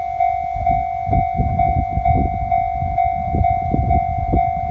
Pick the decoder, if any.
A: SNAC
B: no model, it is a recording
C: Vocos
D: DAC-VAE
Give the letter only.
B